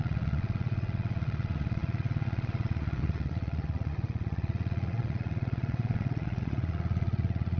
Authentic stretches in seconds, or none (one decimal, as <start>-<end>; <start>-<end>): none